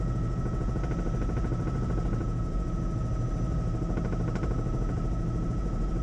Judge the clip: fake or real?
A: real